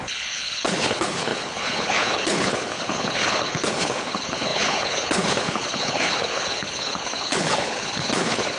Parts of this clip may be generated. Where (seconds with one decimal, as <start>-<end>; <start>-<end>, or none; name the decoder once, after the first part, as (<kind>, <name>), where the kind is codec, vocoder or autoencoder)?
0.0-8.6 (codec, HILCodec)